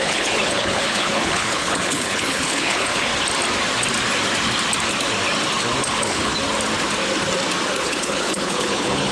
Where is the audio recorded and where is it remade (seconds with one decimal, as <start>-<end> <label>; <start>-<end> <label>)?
0.0-3.1 remade; 3.1-5.8 recorded; 5.8-6.3 remade; 6.3-7.8 recorded; 7.8-9.1 remade

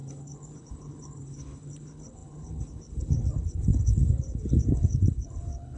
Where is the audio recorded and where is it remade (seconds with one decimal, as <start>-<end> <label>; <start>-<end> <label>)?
0.0-5.8 remade

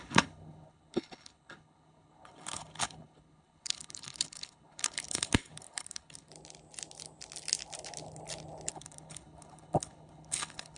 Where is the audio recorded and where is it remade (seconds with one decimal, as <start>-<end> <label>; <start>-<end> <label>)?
0.0-6.3 remade; 6.3-8.7 recorded; 8.7-10.8 remade

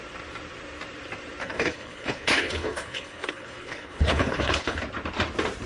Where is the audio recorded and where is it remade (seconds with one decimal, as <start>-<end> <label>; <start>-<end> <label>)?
0.0-1.4 recorded; 1.4-4.8 remade; 4.8-5.7 recorded

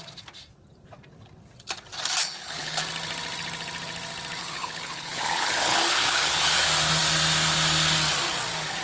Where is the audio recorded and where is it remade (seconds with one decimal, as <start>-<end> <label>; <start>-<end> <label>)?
0.0-2.2 recorded; 2.2-2.8 remade; 2.8-4.4 recorded; 4.4-6.5 remade; 6.5-8.8 recorded